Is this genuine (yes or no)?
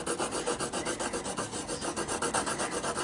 yes